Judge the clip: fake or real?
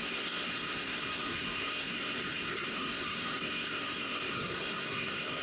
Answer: fake